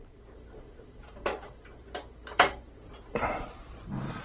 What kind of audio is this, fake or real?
fake